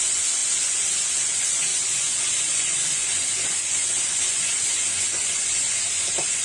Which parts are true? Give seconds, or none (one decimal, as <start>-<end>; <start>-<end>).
none